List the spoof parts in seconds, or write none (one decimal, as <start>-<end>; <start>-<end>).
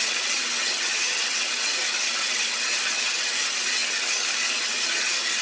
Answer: 0.0-5.4